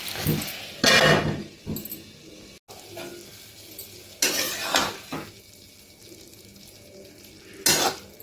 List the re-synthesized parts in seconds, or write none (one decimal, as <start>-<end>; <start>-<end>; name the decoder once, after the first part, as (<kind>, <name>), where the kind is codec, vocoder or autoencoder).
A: none

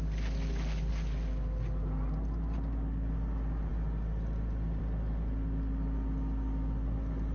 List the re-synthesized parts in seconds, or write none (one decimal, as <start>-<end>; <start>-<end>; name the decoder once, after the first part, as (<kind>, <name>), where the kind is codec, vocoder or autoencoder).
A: none

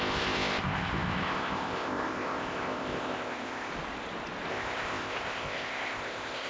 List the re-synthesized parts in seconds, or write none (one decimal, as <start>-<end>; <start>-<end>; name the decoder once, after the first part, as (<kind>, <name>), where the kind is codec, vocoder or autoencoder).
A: 0.0-3.7 (codec, ZipCodec); 4.5-6.5

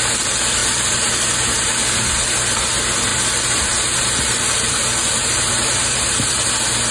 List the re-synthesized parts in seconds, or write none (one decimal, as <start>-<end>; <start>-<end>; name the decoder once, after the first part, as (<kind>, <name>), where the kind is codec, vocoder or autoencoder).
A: 0.6-1.7 (vocoder, BigVGAN v2); 3.1-6.3

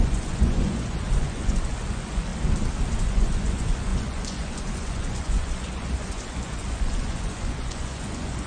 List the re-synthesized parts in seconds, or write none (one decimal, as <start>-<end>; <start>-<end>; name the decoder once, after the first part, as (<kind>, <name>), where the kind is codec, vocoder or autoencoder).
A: 0.0-2.3 (vocoder, Vocos); 2.9-8.5

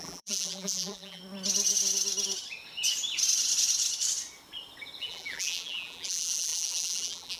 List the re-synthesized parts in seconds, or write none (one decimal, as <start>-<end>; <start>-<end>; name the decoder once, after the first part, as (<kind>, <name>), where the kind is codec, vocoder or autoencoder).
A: 0.0-1.2 (vocoder, BigVGAN v2); 5.0-7.4

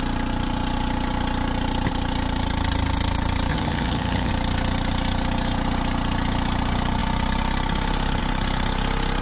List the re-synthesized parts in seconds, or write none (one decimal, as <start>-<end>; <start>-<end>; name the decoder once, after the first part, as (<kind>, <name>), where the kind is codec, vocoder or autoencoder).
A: 3.5-4.3 (vocoder, HiFi-GAN)

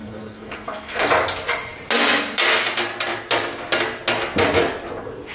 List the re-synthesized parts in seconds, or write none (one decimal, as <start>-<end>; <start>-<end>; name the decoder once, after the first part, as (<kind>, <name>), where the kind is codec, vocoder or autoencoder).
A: 0.0-1.1 (codec, SNAC)